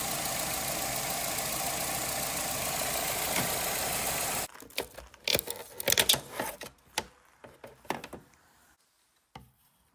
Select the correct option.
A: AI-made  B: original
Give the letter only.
B